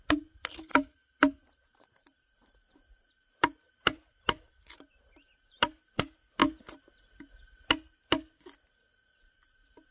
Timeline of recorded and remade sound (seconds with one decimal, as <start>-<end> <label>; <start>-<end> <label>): 0.0-0.7 recorded; 0.7-5.9 remade; 5.9-9.9 recorded